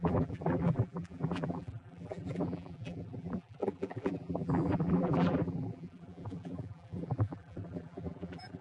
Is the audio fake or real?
fake